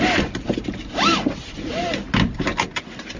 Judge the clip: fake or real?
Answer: real